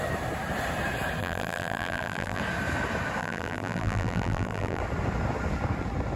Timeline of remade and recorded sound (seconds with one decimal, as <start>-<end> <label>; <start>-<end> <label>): 0.0-1.2 recorded; 1.2-2.4 remade; 2.4-3.2 recorded; 3.2-4.8 remade; 4.8-6.2 recorded